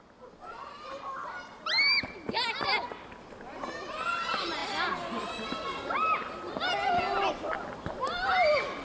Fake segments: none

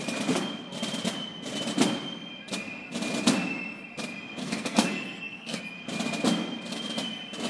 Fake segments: 4.4-5.6 (codec, SNAC)

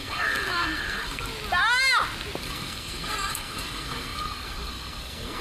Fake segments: 0.0-1.3 (codec, SNAC); 2.4-5.4

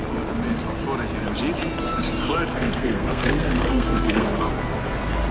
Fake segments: 2.5-4.5 (codec, SNAC)

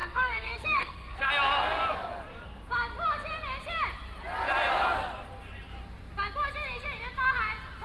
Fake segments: 0.0-1.3 (codec, SNAC)

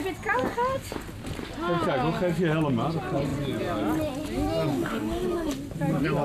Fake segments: 4.7-5.5 (codec, SNAC)

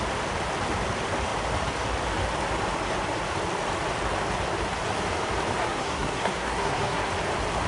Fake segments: 5.6-7.1 (codec, SNAC)